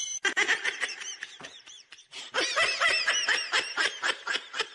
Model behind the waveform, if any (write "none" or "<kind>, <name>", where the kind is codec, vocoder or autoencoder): vocoder, BigVGAN v2